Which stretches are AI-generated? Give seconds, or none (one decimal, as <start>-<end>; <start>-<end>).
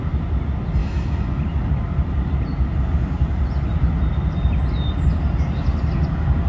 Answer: 0.8-1.4